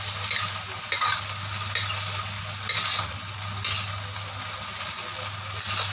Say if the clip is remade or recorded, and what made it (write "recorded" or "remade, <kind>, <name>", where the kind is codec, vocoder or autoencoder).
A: recorded